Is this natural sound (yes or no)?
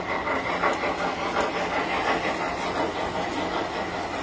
yes